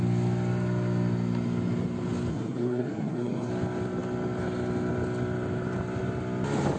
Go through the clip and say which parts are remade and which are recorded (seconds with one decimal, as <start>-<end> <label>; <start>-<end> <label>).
0.0-2.3 recorded; 2.3-3.5 remade; 3.5-6.8 recorded